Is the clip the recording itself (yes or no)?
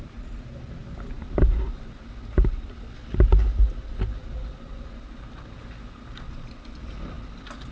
yes